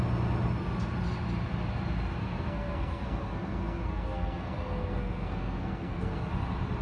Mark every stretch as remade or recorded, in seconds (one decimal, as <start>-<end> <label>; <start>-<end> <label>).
0.0-2.2 recorded; 2.2-6.3 remade; 6.3-6.8 recorded